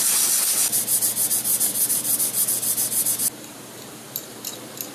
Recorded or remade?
recorded